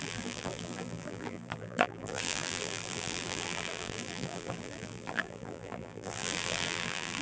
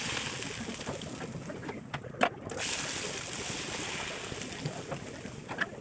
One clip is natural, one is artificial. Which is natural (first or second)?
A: second